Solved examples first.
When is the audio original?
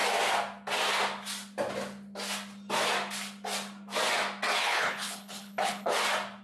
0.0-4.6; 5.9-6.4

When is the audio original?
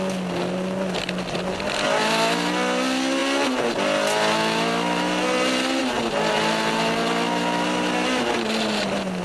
0.0-9.2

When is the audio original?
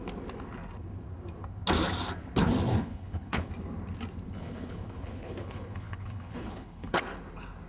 0.0-2.7; 3.5-4.4; 7.0-7.7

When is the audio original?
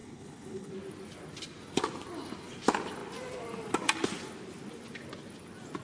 0.7-5.8